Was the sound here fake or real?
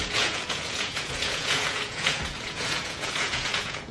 fake